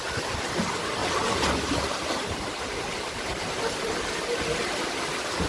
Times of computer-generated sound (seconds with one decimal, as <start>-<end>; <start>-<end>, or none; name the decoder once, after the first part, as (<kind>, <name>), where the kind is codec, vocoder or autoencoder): 1.0-4.3 (vocoder, BigVGAN v2)